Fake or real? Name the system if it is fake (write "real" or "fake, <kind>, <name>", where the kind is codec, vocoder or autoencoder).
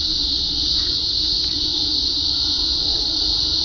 fake, vocoder, Vocos